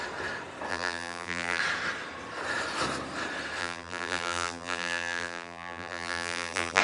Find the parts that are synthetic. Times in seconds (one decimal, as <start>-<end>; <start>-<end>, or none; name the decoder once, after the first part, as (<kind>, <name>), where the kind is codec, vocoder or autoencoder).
0.7-1.6 (vocoder, BigVGAN v2); 3.6-6.8